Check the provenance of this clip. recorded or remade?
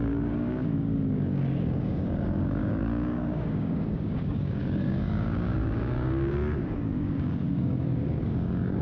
remade